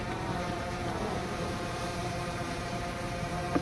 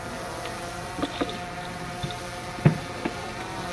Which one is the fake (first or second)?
first